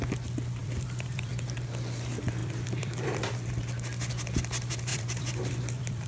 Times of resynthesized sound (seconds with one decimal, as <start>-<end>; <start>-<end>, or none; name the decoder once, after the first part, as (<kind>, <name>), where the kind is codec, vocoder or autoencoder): 0.6-1.3 (vocoder, BigVGAN v2); 2.4-3.6; 4.9-6.1